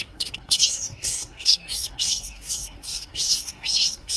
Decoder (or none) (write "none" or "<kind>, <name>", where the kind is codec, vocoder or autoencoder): codec, SNAC